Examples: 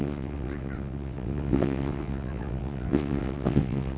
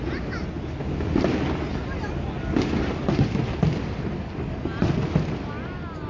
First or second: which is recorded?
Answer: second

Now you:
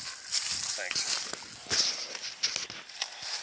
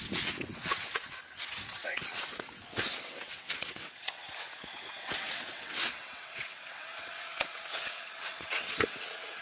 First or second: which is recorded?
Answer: first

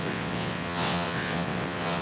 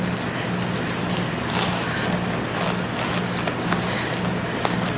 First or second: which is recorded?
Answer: second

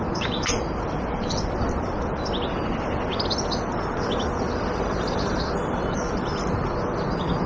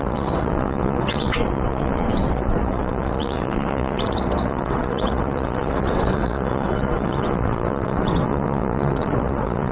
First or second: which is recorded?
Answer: first